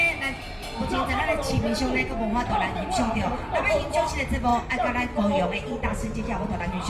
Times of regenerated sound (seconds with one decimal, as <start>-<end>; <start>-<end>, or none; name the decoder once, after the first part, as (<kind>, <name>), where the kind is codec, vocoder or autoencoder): none